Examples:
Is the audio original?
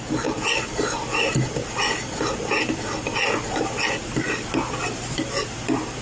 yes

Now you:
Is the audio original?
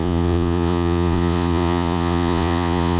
no